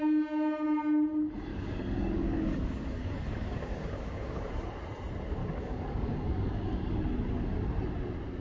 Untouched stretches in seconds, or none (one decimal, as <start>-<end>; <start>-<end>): 0.0-1.5; 4.5-5.4; 7.0-8.4